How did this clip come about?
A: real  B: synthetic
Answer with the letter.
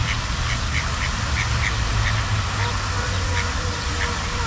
A